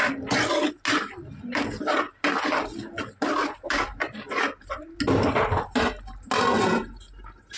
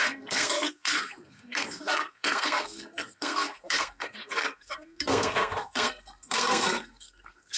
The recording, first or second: first